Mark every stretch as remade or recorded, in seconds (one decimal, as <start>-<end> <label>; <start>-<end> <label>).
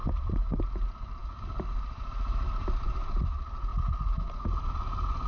0.0-5.3 recorded